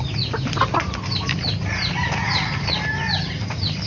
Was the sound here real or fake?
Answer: real